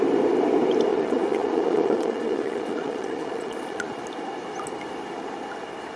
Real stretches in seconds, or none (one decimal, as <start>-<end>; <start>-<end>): 0.0-0.9; 4.0-6.0